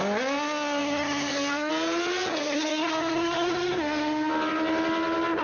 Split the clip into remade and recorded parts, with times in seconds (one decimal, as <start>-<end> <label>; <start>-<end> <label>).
0.0-0.8 recorded; 0.8-1.7 remade; 1.7-2.3 recorded; 2.3-4.3 remade; 4.3-5.4 recorded